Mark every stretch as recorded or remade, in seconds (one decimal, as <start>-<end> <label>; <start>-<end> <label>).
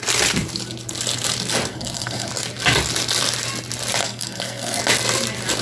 0.0-1.7 recorded; 1.7-2.3 remade; 2.3-4.0 recorded; 4.0-4.8 remade; 4.8-5.6 recorded